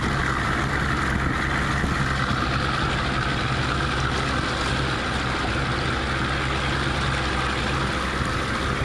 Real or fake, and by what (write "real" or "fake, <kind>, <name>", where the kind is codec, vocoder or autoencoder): real